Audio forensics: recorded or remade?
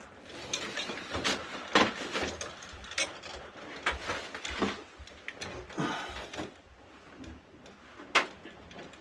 recorded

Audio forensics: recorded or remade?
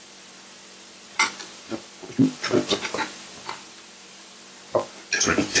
remade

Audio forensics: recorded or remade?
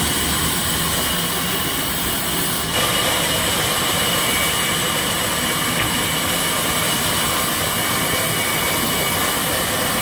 recorded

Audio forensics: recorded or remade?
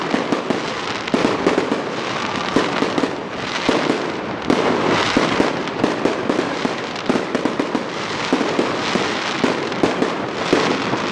recorded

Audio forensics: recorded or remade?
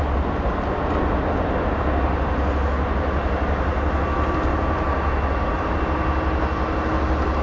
recorded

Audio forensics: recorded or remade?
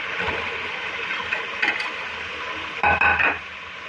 recorded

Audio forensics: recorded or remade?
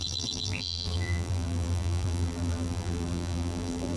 remade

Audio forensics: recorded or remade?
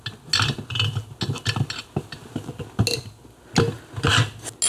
recorded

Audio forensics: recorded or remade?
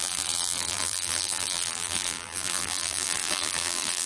remade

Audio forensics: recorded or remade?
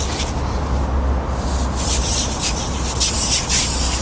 recorded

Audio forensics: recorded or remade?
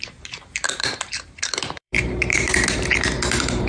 remade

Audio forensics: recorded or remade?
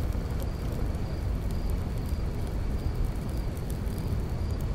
recorded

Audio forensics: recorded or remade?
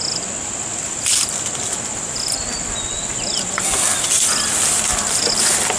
recorded